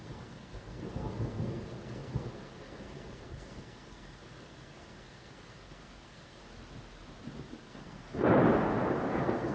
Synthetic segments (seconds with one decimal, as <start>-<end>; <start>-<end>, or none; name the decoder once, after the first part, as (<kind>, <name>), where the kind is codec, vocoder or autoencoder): 0.0-6.4 (codec, SNAC); 7.6-8.3; 9.1-9.5